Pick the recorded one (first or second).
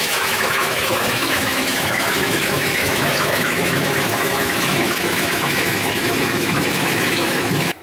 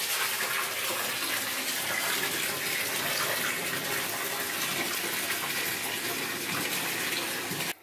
second